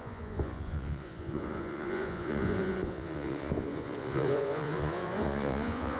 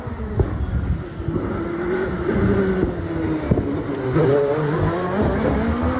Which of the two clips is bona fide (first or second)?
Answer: second